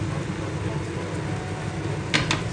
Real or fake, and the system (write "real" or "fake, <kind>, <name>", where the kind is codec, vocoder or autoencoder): real